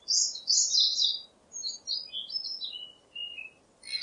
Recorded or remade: recorded